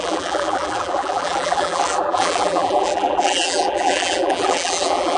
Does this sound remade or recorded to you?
remade